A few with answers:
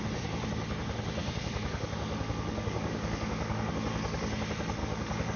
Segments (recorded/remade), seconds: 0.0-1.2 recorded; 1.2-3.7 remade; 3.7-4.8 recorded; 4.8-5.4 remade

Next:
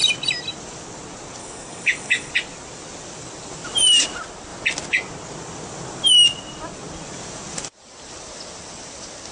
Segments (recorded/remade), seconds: 0.0-1.4 recorded; 1.4-2.3 remade; 2.3-9.3 recorded

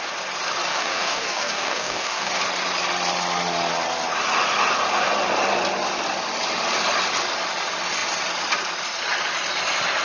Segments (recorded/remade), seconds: 0.0-0.7 recorded; 0.7-2.3 remade; 2.3-10.0 recorded

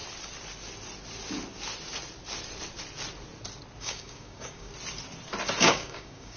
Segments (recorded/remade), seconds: 0.0-3.8 recorded; 3.8-4.7 remade; 4.7-5.6 recorded; 5.6-6.4 remade

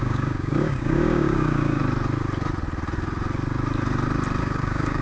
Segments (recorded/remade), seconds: 0.0-1.8 remade; 1.8-4.4 recorded; 4.4-5.0 remade

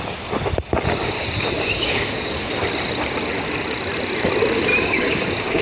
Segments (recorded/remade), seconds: 0.0-1.0 recorded; 1.0-2.5 remade; 2.5-4.7 recorded; 4.7-5.6 remade

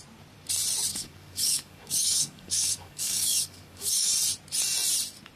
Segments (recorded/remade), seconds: 0.0-0.9 recorded; 0.9-4.1 remade; 4.1-5.4 recorded